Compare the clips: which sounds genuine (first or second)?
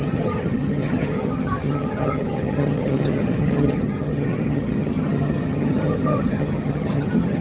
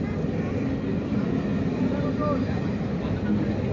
second